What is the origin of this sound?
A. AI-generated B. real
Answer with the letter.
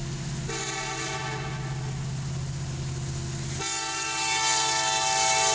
B